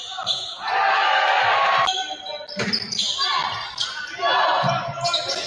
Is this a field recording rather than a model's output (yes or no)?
yes